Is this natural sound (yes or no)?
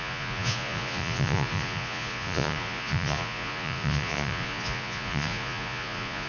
no